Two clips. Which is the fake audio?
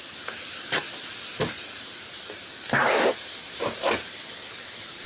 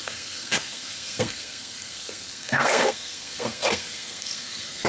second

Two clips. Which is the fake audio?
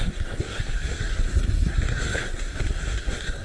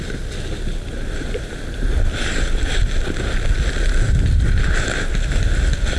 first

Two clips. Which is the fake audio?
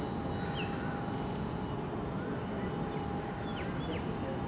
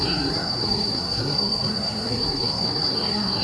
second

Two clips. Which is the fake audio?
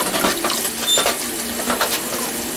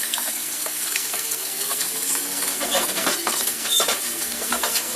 second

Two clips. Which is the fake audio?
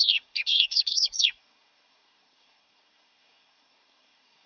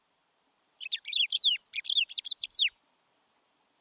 first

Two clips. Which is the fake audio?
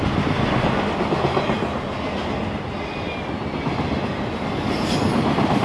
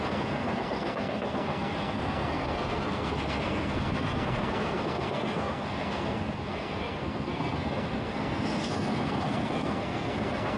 second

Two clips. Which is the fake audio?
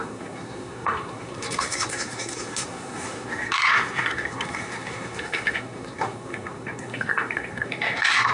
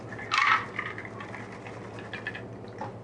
first